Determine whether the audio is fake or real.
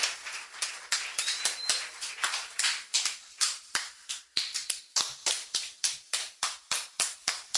real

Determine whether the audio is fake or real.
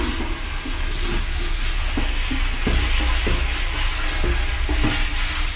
real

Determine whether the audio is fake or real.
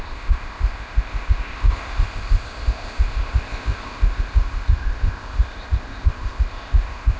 fake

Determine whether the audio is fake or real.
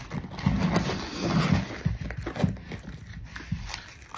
real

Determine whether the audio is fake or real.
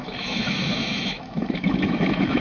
fake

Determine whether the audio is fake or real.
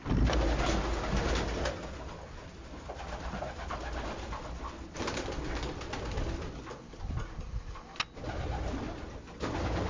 real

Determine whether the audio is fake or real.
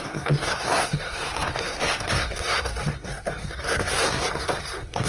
fake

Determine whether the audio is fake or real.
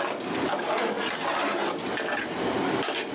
real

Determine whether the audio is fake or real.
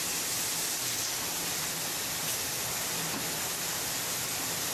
real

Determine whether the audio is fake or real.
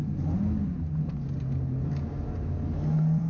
real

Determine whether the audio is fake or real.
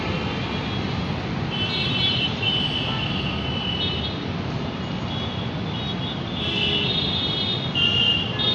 real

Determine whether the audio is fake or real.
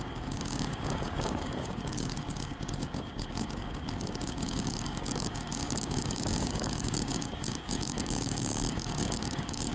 fake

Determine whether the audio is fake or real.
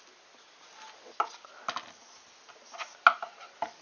real